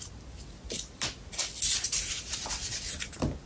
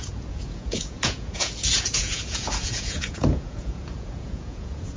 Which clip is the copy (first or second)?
second